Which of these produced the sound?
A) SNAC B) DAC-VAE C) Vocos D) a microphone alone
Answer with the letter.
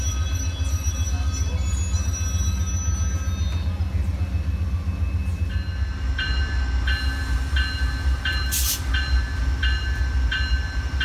D